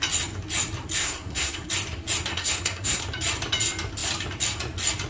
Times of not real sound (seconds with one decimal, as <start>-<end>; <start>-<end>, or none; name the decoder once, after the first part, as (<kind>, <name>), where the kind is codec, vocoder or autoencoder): 1.0-1.7 (codec, SNAC); 2.3-3.0